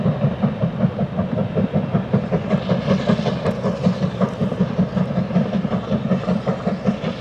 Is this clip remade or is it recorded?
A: recorded